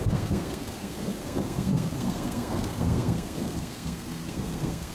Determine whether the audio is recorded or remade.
remade